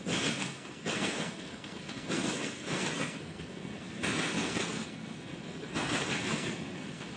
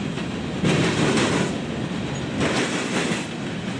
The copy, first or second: first